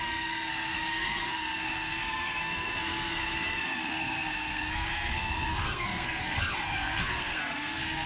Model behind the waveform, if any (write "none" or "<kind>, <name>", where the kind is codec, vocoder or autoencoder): codec, SNAC